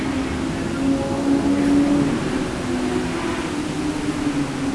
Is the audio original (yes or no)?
yes